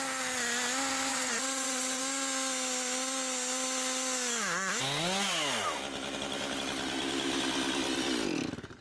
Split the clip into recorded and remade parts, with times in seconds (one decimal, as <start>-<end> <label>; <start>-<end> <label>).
0.0-1.1 recorded; 1.1-2.0 remade; 2.0-8.8 recorded